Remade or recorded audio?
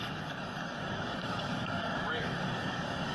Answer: remade